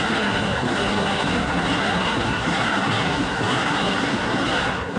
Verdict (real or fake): fake